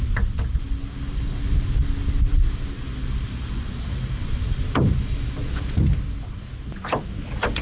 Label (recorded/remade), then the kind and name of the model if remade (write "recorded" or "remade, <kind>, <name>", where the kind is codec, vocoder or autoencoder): recorded